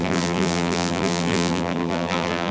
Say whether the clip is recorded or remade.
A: remade